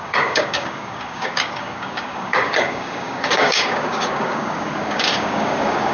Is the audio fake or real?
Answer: fake